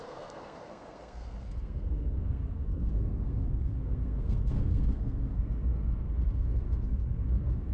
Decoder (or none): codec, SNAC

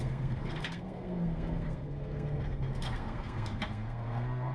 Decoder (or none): codec, SNAC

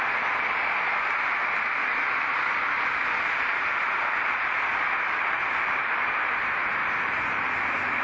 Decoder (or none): none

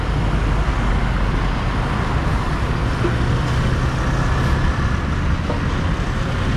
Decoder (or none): none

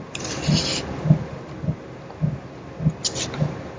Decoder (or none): none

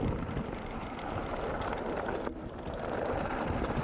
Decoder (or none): none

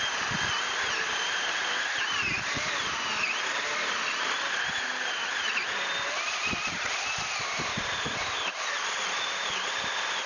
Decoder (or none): none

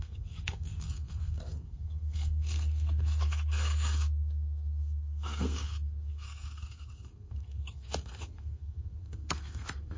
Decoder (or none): codec, SNAC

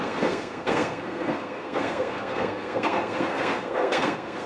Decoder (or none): codec, SNAC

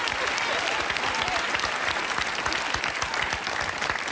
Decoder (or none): none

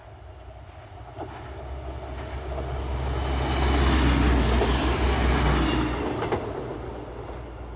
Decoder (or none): none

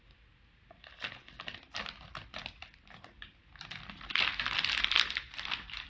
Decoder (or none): none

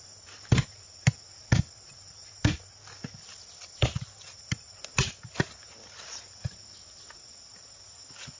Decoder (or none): none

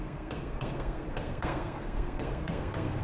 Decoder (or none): codec, SNAC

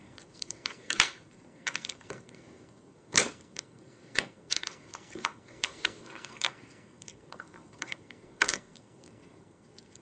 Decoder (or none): codec, SNAC